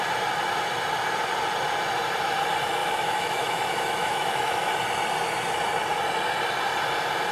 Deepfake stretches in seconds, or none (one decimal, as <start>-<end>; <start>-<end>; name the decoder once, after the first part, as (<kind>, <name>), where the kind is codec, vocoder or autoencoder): 2.8-4.7 (autoencoder, DAC-VAE)